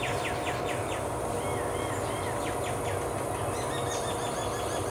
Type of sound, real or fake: real